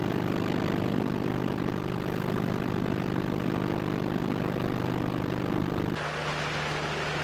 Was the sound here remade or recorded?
recorded